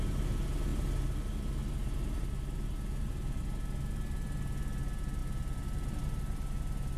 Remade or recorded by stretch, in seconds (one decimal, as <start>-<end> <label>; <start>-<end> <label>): 0.0-7.0 recorded